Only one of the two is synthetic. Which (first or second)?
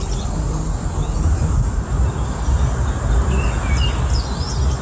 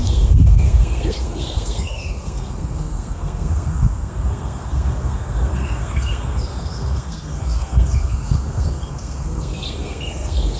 second